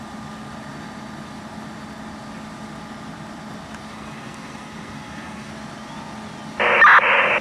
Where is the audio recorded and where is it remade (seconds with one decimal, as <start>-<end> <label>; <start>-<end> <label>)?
0.0-3.9 recorded; 3.9-5.5 remade; 5.5-7.4 recorded